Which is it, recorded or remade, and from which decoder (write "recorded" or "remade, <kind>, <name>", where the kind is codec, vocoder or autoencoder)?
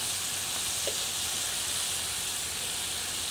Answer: recorded